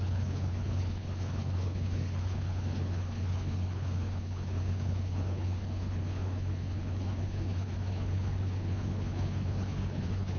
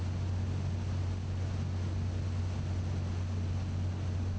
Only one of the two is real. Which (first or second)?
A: second